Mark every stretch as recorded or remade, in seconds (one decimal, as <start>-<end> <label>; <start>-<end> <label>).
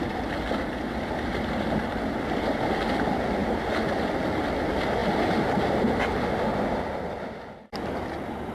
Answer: 0.0-8.5 recorded